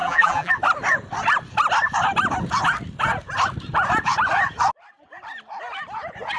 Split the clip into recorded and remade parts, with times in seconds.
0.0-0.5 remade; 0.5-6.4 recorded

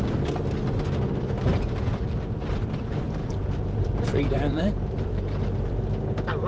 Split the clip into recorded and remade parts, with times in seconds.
0.0-3.2 recorded; 3.2-5.7 remade; 5.7-6.5 recorded

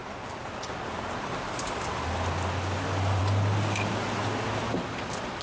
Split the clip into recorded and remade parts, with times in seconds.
0.0-5.4 recorded

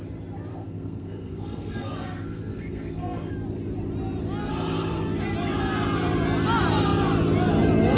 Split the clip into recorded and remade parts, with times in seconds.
0.0-0.5 recorded; 0.5-3.3 remade; 3.3-4.4 recorded; 4.4-5.0 remade; 5.0-8.0 recorded

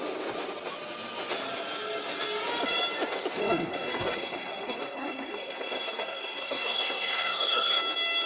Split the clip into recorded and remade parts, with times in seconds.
0.0-3.4 recorded; 3.4-7.8 remade; 7.8-8.3 recorded

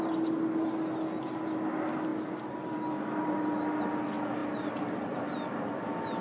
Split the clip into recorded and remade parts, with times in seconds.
0.0-6.2 recorded

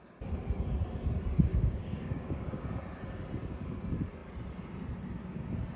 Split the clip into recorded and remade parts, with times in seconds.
0.0-1.5 recorded; 1.5-2.7 remade; 2.7-5.8 recorded